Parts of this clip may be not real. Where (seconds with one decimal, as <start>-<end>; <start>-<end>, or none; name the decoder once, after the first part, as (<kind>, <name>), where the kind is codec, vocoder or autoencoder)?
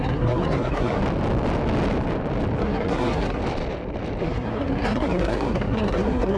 0.0-1.0 (codec, SNAC); 2.6-3.4; 4.2-6.4